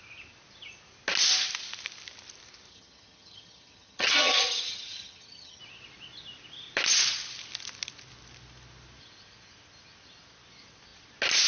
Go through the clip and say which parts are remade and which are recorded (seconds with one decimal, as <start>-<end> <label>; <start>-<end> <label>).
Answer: 0.0-2.7 recorded; 2.7-5.6 remade; 5.6-11.5 recorded